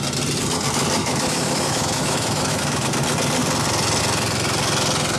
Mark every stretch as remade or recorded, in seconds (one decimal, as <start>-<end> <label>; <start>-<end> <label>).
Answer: 0.0-1.0 recorded; 1.0-2.9 remade; 2.9-5.2 recorded